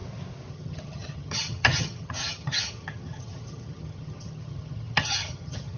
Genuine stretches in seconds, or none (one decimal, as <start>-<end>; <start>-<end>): 0.0-0.5